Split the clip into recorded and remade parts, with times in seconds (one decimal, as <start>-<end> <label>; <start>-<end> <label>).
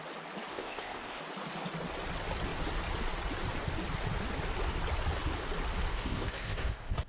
0.0-0.5 recorded; 0.5-1.2 remade; 1.2-5.9 recorded; 5.9-7.1 remade